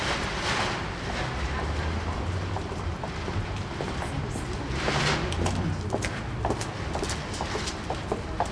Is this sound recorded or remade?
recorded